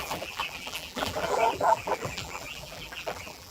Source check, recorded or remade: remade